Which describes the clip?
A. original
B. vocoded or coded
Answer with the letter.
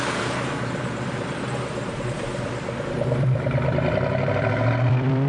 B